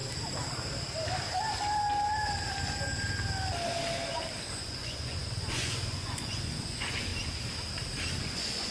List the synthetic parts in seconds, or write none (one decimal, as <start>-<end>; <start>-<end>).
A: 4.5-7.1; 8.2-8.7